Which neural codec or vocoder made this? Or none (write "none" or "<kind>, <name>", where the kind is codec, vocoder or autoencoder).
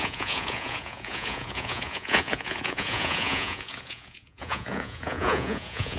vocoder, Vocos